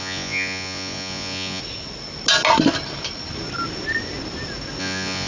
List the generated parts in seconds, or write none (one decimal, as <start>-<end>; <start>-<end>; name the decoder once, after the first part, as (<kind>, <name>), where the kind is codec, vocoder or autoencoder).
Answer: 0.0-1.6 (vocoder, Vocos); 4.8-5.3